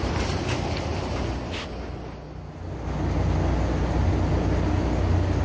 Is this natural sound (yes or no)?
yes